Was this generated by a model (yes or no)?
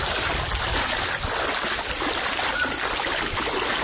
no